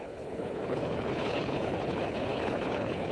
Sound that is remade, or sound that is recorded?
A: remade